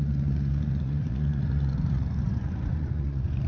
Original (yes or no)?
no